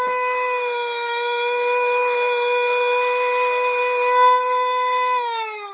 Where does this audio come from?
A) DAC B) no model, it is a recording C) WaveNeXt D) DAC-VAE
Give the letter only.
A